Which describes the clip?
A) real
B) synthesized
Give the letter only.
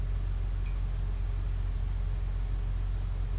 A